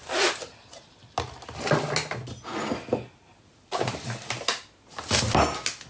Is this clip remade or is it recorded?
recorded